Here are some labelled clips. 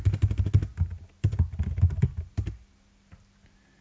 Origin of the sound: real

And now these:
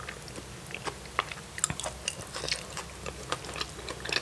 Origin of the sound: real